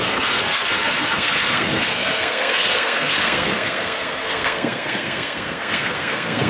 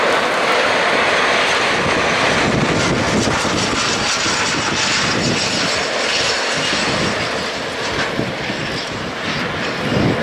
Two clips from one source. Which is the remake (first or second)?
first